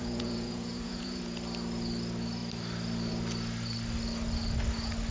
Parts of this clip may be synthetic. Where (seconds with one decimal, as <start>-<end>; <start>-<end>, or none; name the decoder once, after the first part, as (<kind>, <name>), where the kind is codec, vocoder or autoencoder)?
0.0-1.2 (vocoder, Vocos)